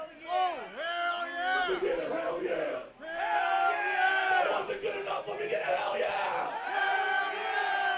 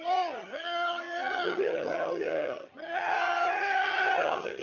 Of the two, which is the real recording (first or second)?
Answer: first